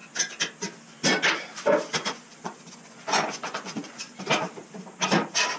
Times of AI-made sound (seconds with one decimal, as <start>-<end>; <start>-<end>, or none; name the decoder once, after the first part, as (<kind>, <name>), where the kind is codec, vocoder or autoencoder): 2.0-4.2 (vocoder, Vocos)